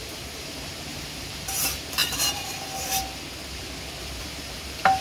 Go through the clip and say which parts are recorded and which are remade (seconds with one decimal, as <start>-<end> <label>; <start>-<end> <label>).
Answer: 0.0-2.0 remade; 2.0-4.2 recorded; 4.2-5.0 remade